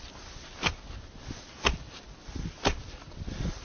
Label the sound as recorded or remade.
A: recorded